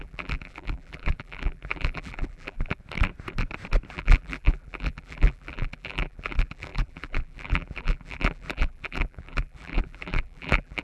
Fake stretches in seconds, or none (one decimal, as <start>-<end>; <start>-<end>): 0.0-2.8; 3.9-10.8